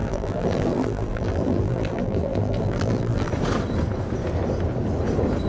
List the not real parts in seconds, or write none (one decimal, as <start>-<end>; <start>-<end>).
0.0-3.3